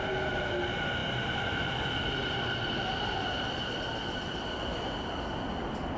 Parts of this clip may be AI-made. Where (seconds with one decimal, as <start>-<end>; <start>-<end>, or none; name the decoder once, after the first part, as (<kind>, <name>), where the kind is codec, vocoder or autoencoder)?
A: none